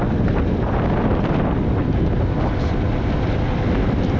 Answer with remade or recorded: recorded